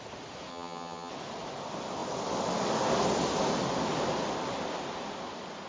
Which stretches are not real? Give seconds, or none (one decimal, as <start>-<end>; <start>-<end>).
0.5-1.1